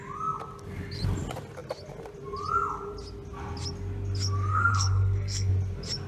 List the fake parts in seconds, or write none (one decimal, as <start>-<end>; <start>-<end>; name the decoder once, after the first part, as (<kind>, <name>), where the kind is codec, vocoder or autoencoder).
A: 4.5-5.5 (codec, SNAC)

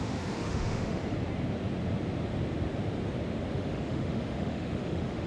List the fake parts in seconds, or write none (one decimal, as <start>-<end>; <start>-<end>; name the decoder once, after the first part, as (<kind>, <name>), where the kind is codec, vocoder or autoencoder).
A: 0.0-1.0 (autoencoder, DAC-VAE); 3.5-5.3

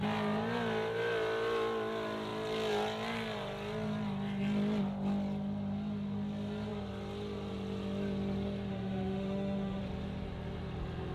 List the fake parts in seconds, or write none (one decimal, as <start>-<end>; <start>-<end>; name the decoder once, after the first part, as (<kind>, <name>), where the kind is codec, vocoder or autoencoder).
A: 8.7-9.8 (autoencoder, DAC-VAE)

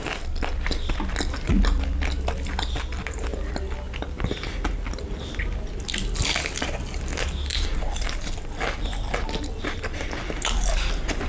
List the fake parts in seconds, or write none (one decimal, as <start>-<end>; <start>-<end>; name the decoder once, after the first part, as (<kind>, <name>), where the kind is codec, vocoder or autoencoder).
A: none

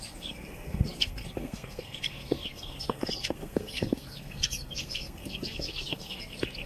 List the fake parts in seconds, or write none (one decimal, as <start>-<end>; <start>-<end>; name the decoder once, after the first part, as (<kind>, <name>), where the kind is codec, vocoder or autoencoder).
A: 0.0-6.7 (codec, SNAC)

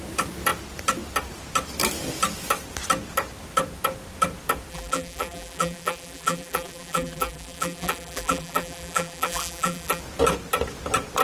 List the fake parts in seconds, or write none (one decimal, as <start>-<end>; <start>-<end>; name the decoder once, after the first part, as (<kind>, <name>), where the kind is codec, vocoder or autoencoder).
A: 4.7-10.0 (vocoder, BigVGAN v2)